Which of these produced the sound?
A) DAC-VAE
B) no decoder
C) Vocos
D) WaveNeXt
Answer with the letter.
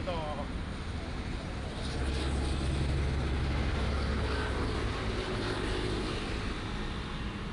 B